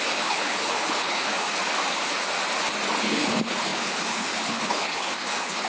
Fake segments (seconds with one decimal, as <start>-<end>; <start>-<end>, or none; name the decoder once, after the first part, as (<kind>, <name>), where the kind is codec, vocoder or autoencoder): 0.0-1.5 (codec, HILCodec); 3.0-5.7